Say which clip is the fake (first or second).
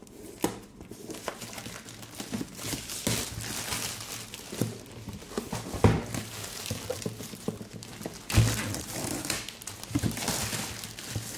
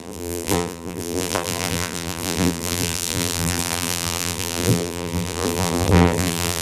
second